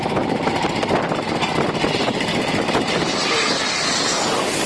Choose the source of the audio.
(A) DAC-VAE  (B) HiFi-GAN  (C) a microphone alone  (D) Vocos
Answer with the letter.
C